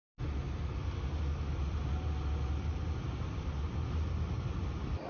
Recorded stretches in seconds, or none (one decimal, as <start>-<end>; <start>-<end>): 0.0-5.1